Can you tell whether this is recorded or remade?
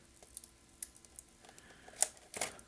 recorded